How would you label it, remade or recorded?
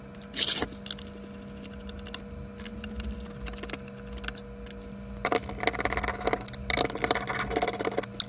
recorded